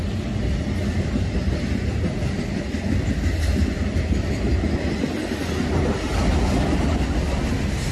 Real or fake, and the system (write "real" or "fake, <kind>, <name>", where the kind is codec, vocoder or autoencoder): real